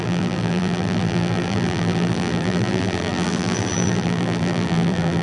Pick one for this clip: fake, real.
fake